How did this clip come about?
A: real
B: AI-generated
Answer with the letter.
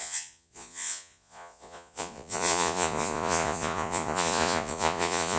B